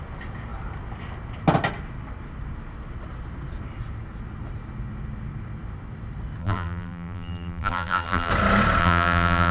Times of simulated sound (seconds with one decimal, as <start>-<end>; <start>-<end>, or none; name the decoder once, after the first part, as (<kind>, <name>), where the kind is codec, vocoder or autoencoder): 6.4-8.3 (vocoder, BigVGAN v2); 8.8-9.5